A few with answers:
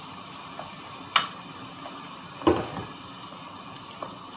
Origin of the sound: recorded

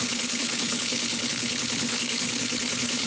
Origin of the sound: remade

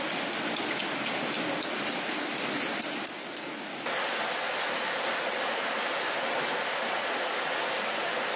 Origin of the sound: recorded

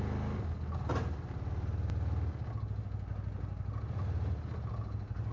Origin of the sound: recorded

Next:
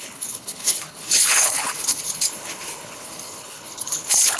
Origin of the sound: remade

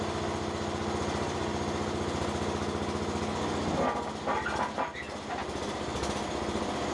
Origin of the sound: recorded